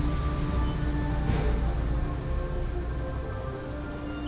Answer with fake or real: real